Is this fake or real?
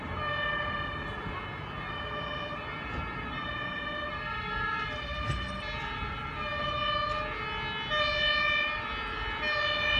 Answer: real